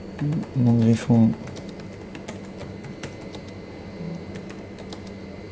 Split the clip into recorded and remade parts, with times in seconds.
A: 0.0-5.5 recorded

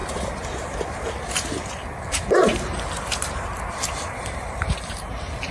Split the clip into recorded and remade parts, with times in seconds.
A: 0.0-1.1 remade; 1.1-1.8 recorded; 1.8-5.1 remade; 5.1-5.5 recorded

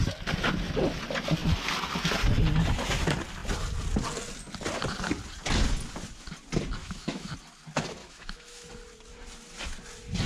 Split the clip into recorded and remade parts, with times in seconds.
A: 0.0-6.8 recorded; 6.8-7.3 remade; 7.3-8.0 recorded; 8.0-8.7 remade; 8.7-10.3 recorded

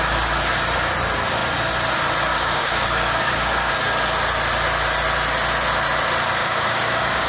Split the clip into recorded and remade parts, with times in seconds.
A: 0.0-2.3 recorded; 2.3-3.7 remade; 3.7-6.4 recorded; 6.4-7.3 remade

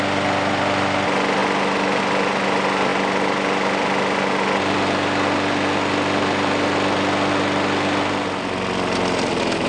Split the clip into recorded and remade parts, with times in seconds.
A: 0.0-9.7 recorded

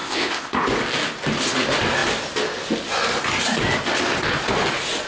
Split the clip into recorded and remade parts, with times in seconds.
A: 0.0-0.6 remade; 0.6-5.1 recorded